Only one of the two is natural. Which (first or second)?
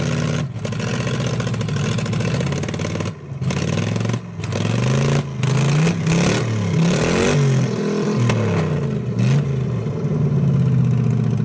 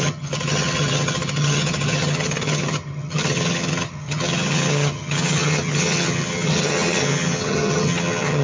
first